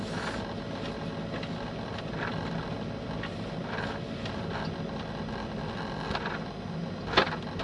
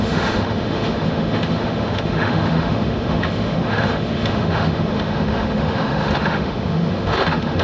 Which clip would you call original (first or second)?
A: first